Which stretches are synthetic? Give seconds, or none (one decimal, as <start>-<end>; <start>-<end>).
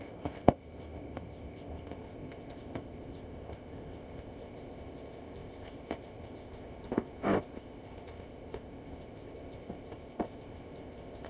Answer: 0.0-11.3